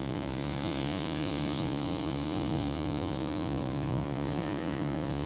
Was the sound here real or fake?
fake